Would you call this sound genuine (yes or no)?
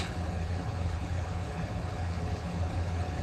no